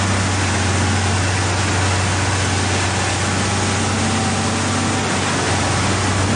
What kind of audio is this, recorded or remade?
recorded